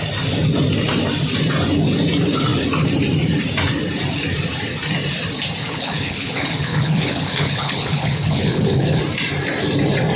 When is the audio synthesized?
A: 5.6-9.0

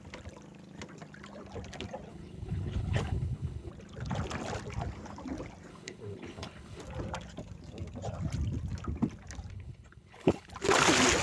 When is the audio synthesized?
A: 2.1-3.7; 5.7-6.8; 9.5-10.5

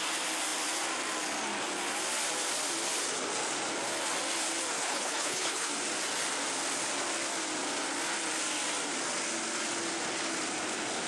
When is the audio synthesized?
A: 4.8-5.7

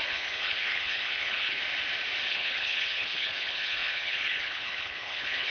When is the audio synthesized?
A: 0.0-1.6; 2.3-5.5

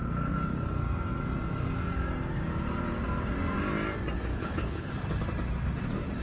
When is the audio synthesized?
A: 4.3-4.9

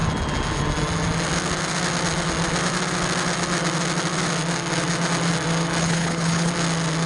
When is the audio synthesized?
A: 5.8-6.5

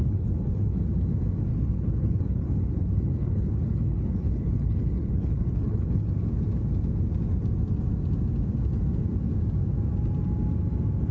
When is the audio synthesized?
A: 0.0-0.8; 1.5-6.1